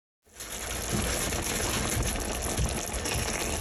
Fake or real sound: real